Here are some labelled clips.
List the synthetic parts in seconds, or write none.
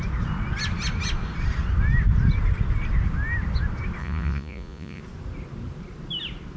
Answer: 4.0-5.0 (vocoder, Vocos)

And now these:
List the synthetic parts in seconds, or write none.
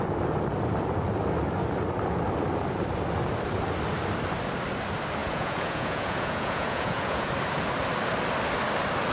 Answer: 5.2-7.3 (vocoder, Vocos)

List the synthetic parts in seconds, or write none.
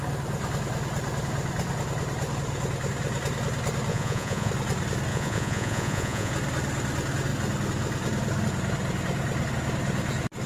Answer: 3.9-4.5 (vocoder, Vocos); 5.1-6.3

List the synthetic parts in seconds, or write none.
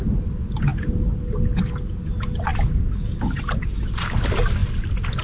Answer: none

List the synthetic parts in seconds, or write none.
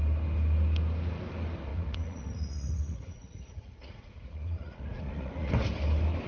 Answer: 1.7-5.5 (vocoder, Vocos)